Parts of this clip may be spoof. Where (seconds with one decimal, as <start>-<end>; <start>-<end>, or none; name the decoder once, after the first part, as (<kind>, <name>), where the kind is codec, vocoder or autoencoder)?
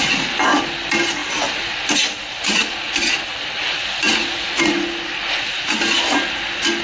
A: none